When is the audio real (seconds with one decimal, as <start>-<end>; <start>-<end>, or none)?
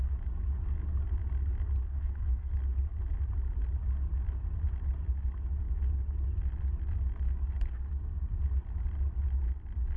0.0-1.9; 2.5-10.0